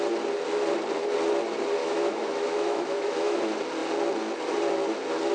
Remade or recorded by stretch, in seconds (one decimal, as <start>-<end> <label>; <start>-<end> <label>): 0.0-1.8 recorded; 1.8-3.4 remade; 3.4-5.3 recorded